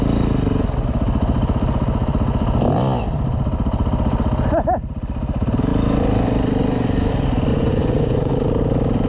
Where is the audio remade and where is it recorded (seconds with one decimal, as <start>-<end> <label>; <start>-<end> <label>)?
0.0-7.5 recorded; 7.5-8.3 remade; 8.3-9.1 recorded